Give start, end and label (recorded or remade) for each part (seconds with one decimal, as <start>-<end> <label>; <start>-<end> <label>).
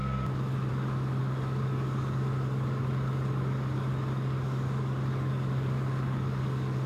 0.0-0.7 recorded; 0.7-6.9 remade